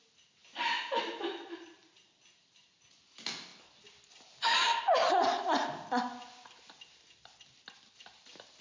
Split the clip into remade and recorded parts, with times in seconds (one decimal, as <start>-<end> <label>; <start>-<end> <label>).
0.0-8.6 recorded